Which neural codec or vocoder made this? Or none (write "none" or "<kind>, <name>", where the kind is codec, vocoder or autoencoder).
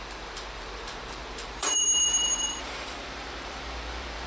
vocoder, BigVGAN v2